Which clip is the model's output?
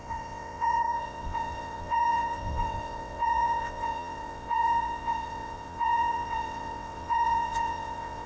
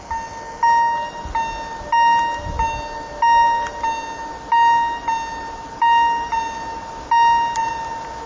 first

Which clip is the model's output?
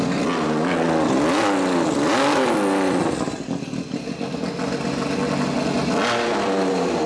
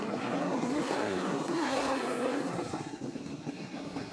second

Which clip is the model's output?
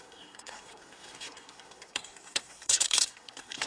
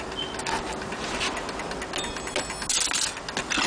first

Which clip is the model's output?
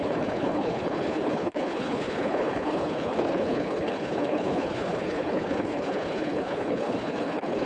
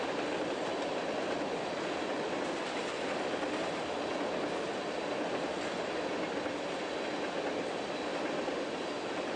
first